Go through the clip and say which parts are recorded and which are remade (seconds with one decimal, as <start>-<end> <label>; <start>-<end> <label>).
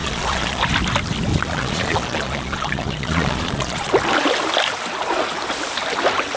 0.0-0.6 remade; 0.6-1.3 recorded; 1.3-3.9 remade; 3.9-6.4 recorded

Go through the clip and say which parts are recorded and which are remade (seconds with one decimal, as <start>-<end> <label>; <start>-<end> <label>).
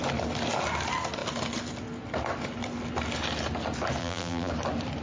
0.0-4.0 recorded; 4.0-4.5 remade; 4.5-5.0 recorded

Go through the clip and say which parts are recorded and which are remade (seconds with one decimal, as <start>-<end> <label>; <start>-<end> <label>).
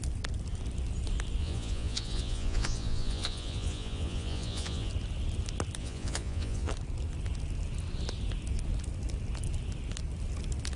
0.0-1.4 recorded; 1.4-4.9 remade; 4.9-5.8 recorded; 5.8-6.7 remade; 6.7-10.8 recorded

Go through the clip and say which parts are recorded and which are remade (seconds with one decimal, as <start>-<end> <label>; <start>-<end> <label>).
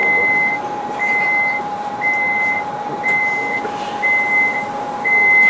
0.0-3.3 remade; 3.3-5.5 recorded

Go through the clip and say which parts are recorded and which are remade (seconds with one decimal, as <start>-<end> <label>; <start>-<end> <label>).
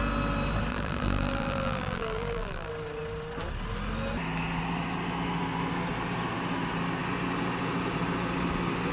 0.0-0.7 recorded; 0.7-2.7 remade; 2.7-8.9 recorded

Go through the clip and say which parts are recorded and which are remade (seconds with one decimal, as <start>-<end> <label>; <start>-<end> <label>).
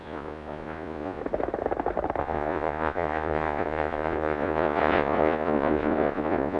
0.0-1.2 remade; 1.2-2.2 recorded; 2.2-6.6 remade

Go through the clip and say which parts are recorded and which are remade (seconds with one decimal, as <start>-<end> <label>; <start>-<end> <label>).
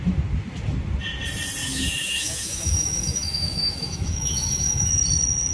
0.0-1.6 recorded; 1.6-4.9 remade; 4.9-5.5 recorded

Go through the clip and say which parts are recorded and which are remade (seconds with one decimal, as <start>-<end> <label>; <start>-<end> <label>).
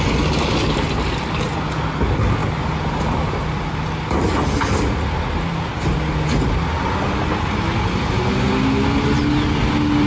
0.0-10.1 recorded